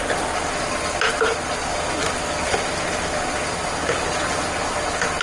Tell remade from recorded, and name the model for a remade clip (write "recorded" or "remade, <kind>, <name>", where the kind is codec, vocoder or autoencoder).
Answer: recorded